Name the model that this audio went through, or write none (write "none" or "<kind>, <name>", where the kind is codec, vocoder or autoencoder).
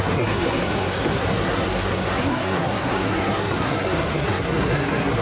codec, SNAC